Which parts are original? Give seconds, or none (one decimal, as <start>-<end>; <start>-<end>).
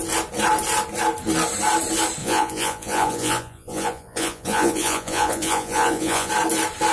0.0-2.2; 6.3-6.9